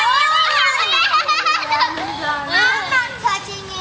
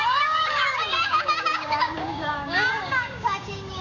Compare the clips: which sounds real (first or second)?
first